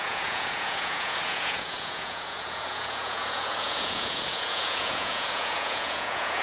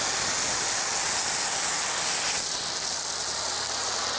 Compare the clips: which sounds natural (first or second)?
second